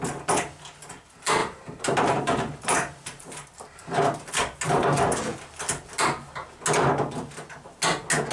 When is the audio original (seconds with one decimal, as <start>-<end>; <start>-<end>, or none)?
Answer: 0.0-1.4; 4.3-8.3